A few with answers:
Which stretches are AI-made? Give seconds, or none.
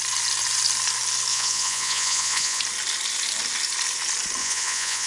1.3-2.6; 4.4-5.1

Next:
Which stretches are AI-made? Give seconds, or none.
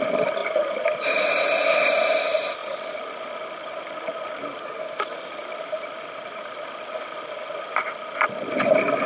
none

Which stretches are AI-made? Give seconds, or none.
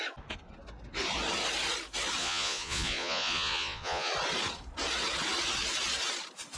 2.2-4.1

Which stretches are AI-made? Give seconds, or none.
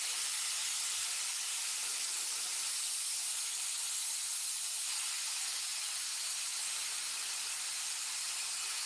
none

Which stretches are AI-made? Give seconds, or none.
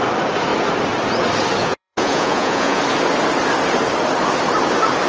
1.6-2.8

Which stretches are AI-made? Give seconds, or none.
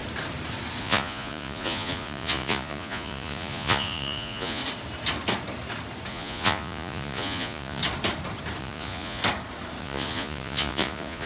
0.8-4.6; 6.1-7.8; 8.6-9.2; 9.8-11.3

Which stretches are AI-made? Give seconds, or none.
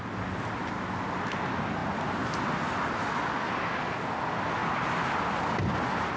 none